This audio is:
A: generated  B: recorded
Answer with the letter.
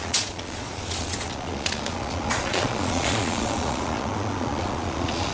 A